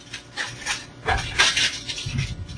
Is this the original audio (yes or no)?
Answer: yes